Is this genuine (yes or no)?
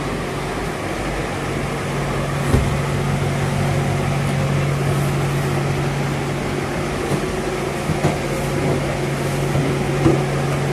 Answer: yes